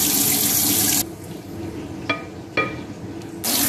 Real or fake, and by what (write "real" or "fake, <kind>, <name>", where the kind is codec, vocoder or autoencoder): real